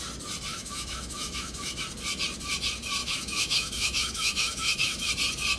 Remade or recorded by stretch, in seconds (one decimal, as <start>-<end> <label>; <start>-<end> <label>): 0.0-0.5 recorded; 0.5-1.8 remade; 1.8-3.0 recorded; 3.0-5.1 remade; 5.1-5.6 recorded